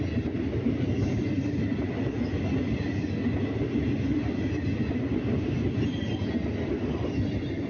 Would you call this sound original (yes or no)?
yes